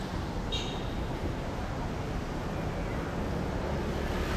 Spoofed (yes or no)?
no